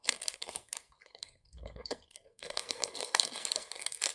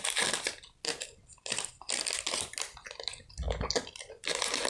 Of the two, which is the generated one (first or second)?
first